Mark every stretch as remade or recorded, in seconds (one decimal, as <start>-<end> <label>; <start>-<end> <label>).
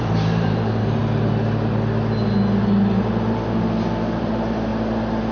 0.0-1.0 remade; 1.0-4.2 recorded; 4.2-4.7 remade; 4.7-5.3 recorded